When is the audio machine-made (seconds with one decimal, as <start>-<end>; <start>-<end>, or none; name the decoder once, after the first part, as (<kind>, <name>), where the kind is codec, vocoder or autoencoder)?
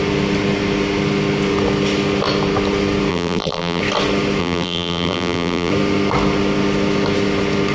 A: 3.1-3.8 (vocoder, BigVGAN v2); 4.4-5.7